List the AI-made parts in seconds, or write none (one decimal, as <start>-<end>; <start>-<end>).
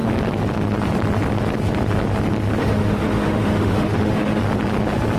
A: 2.6-4.4